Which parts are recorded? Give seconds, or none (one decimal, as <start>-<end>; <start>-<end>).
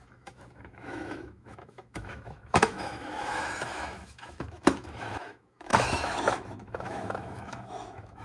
none